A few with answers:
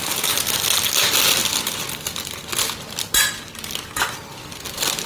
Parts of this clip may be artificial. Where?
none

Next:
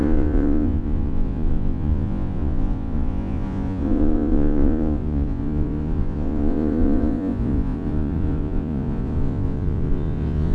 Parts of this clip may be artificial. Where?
0.0-10.5

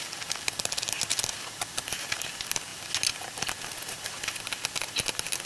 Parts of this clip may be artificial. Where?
none

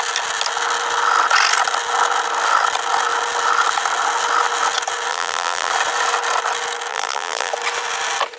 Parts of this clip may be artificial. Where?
5.1-5.7; 6.9-7.5

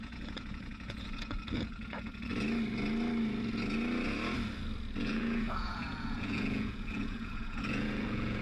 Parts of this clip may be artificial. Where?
0.0-2.3; 5.0-8.4

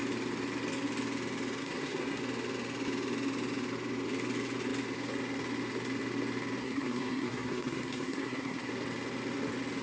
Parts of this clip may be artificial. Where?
1.6-2.2; 6.6-8.7